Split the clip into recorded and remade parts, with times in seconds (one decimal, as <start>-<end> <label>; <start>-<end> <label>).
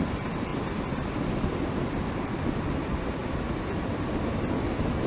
0.0-0.5 remade; 0.5-1.6 recorded; 1.6-3.2 remade; 3.2-4.3 recorded; 4.3-5.1 remade